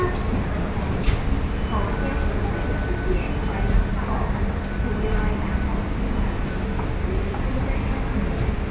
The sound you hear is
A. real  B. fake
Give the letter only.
A